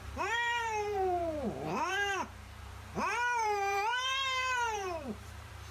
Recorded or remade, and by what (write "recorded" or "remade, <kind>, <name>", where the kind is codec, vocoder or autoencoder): remade, vocoder, BigVGAN v2